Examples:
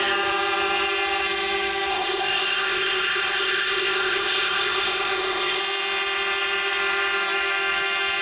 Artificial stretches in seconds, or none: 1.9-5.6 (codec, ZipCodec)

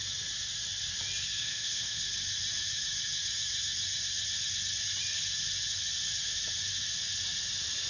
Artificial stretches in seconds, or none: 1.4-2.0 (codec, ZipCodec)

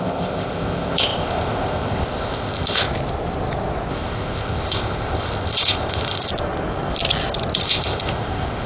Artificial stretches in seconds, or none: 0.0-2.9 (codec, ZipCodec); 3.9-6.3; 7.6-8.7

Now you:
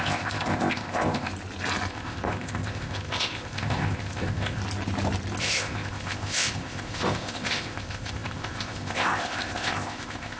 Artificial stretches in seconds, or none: 0.0-1.3 (codec, ZipCodec); 1.9-4.6; 5.4-10.4